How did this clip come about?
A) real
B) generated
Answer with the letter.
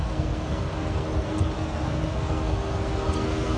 B